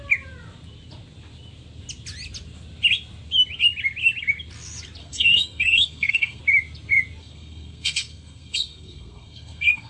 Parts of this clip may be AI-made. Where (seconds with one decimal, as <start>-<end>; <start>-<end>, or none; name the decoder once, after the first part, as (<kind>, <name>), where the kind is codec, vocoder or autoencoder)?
5.0-6.4 (codec, SNAC); 7.2-9.9